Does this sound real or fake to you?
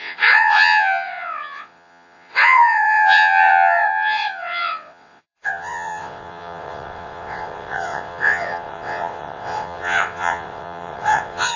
fake